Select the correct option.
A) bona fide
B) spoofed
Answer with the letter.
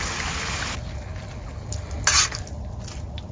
A